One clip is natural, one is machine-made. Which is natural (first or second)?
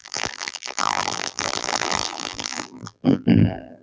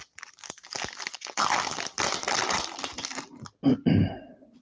second